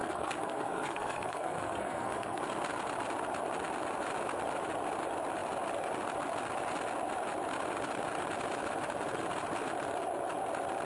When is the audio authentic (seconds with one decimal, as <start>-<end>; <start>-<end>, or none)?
2.4-10.9